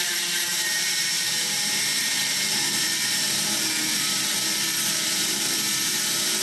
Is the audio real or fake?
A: fake